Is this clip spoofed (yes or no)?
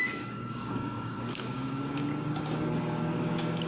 yes